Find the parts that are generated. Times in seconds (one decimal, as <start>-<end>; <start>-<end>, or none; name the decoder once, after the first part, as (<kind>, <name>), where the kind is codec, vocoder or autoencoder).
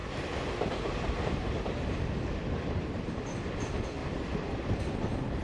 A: 0.0-3.2 (vocoder, BigVGAN v2); 4.0-4.8